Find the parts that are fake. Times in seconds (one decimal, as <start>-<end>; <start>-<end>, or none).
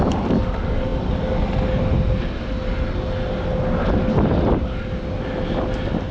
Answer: none